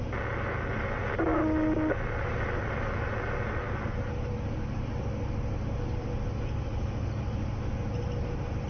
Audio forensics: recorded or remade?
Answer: recorded